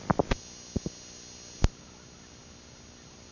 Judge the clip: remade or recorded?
recorded